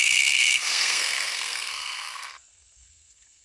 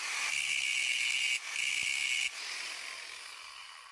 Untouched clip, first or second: second